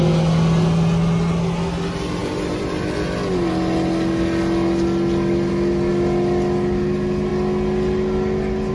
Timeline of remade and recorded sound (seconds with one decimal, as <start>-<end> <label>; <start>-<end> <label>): 0.0-8.7 recorded